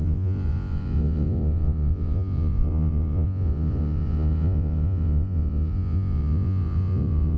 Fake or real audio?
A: fake